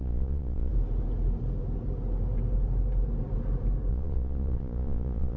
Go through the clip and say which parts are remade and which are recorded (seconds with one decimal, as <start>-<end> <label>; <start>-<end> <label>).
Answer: 0.0-0.7 remade; 0.7-3.9 recorded; 3.9-5.4 remade